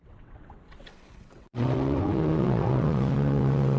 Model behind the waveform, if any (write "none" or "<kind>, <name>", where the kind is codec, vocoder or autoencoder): vocoder, WaveNeXt